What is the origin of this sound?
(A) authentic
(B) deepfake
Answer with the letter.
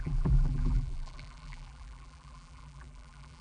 B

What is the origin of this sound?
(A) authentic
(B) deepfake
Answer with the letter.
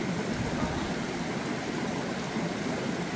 A